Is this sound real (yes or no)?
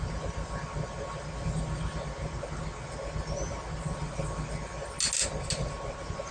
yes